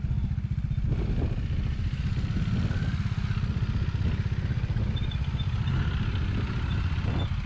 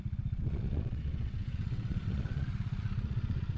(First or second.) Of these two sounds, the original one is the first